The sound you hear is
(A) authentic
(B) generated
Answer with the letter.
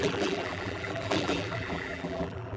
B